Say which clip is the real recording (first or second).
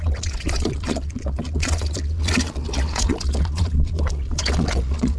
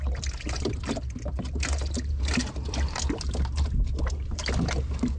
second